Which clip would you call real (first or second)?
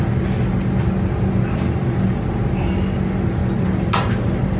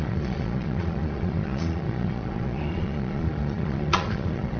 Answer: first